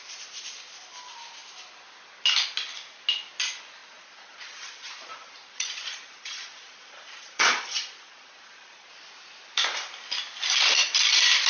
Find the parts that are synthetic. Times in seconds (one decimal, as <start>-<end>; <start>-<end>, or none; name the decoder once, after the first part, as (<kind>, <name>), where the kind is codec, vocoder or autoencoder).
3.8-8.9 (vocoder, Vocos)